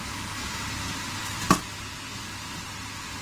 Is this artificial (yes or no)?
no